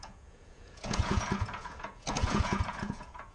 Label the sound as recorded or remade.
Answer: remade